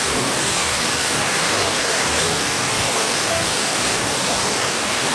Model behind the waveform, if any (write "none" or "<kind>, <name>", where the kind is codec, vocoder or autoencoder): codec, DAC